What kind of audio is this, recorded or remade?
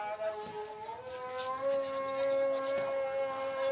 recorded